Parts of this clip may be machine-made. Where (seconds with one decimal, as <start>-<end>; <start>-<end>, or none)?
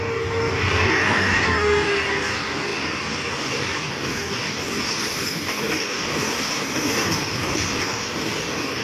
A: 0.0-8.8